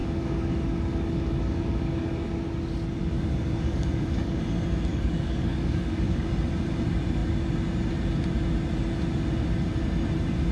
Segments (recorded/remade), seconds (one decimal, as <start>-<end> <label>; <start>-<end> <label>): 0.0-2.3 remade; 2.3-3.0 recorded; 3.0-4.4 remade; 4.4-4.9 recorded; 4.9-6.3 remade; 6.3-10.5 recorded